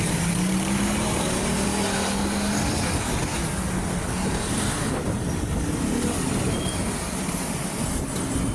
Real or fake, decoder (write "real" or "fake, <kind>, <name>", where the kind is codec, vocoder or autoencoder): real